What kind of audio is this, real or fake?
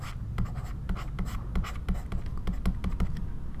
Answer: real